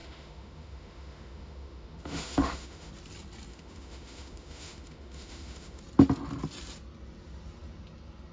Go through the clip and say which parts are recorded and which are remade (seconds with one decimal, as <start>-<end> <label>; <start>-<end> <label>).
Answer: 0.0-2.9 remade; 2.9-3.5 recorded; 3.5-5.8 remade; 5.8-8.3 recorded